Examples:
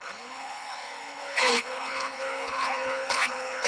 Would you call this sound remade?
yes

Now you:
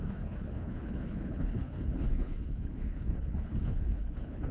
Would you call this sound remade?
yes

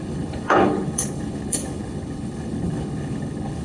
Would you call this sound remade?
yes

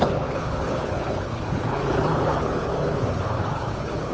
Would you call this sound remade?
yes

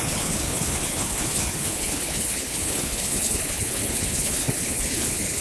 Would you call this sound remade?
yes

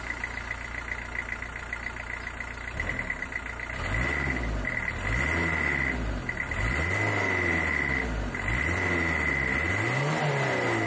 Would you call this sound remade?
no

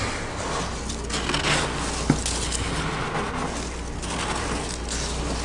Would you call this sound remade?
no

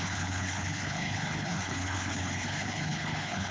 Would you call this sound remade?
yes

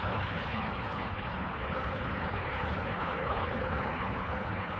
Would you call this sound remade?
yes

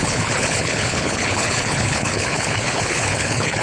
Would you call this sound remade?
yes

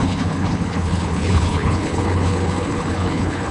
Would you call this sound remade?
yes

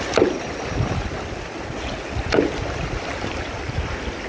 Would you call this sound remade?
no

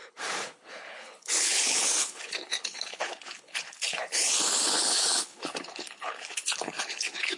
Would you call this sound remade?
yes